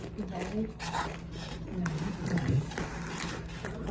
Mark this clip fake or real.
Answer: real